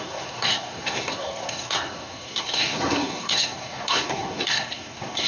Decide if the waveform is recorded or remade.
remade